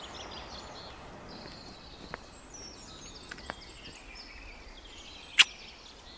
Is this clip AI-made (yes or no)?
no